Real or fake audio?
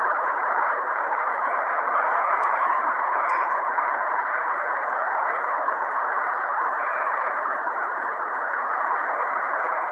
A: fake